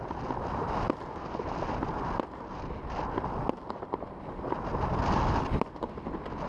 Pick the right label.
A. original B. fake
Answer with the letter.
A